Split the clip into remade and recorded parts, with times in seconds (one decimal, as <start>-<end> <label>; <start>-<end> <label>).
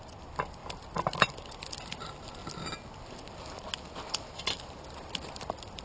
0.0-5.8 recorded